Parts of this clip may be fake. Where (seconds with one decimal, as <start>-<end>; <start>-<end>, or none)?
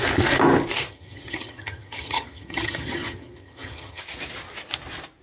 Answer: 0.9-4.0